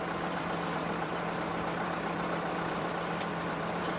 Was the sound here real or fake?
fake